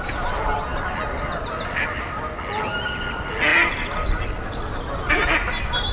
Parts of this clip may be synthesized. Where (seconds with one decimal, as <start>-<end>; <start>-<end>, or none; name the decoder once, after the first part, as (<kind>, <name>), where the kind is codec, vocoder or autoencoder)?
none